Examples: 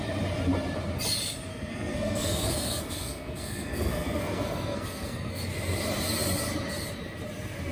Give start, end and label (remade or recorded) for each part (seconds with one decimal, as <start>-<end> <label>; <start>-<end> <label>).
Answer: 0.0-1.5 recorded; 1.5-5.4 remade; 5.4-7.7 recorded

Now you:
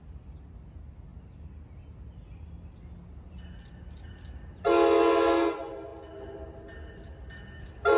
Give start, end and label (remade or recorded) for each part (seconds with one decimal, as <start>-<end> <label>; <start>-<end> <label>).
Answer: 0.0-8.0 recorded

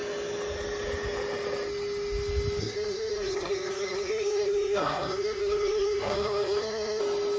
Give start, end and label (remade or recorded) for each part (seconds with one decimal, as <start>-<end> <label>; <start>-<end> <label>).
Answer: 0.0-2.6 recorded; 2.6-7.0 remade; 7.0-7.4 recorded